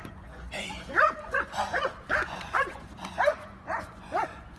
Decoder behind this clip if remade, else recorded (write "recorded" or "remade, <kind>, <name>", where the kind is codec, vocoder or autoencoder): remade, vocoder, Vocos